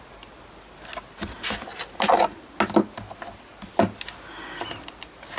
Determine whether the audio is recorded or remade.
recorded